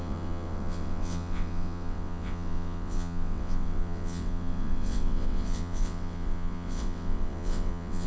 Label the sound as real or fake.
fake